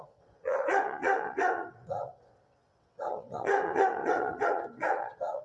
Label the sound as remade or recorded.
remade